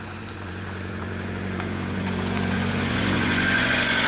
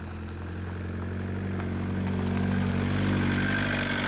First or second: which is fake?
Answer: first